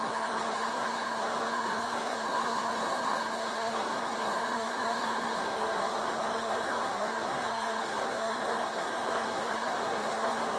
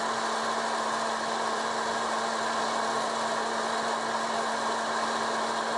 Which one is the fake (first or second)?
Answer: first